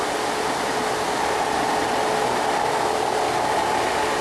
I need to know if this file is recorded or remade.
recorded